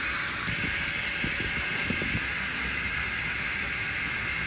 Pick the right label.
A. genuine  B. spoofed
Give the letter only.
A